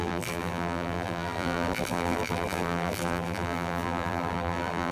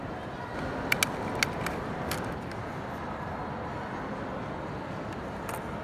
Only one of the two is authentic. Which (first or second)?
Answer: second